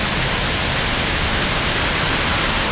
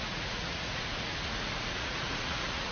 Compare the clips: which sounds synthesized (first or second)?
second